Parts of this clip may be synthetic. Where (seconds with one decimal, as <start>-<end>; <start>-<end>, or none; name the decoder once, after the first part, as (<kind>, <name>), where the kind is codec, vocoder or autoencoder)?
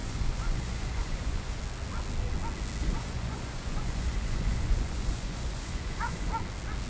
0.0-1.6 (vocoder, Vocos); 2.8-6.3